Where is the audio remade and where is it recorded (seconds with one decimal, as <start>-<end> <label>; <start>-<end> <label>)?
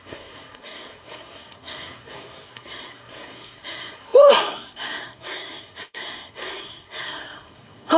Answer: 0.0-8.0 remade